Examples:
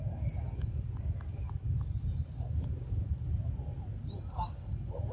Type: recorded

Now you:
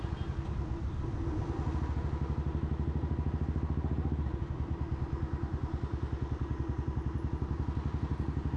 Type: recorded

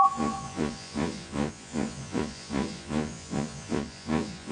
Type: remade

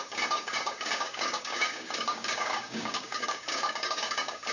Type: remade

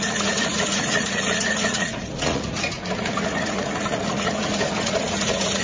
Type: remade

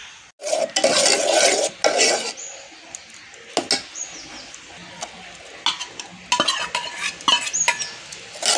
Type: recorded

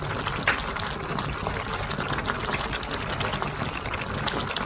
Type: recorded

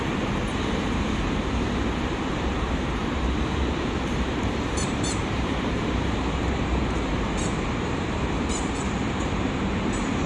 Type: remade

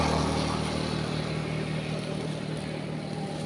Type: recorded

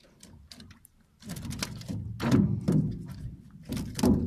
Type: recorded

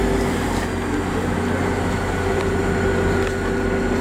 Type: recorded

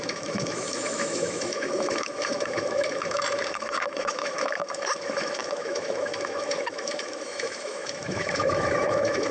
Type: remade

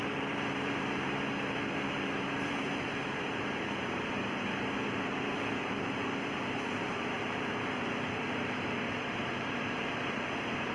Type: remade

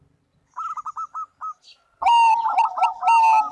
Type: recorded